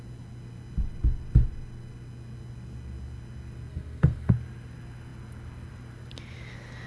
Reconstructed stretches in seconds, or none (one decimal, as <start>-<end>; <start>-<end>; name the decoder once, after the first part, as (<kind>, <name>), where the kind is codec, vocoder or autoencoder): 3.7-4.3 (codec, SNAC)